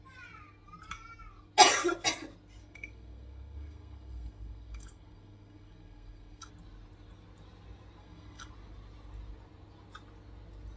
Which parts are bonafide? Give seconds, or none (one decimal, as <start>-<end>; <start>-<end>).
0.0-2.6; 6.5-8.0; 8.5-10.8